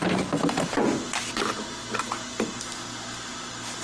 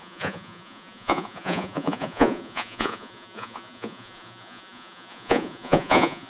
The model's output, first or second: second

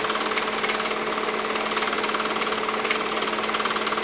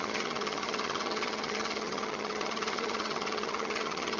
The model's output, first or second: second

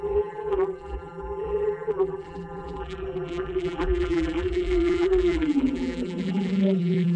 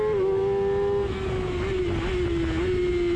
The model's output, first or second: first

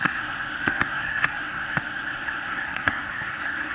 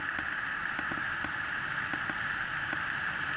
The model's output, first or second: first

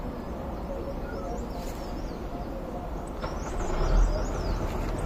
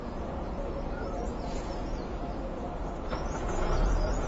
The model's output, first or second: second